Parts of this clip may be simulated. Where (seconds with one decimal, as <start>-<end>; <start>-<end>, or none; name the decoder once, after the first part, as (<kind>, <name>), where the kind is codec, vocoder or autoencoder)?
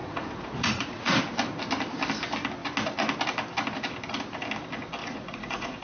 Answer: 0.0-1.2 (vocoder, Vocos); 5.0-5.8